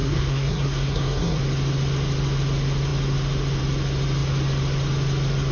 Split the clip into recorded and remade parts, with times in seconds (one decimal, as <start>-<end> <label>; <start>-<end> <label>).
0.0-1.4 remade; 1.4-5.5 recorded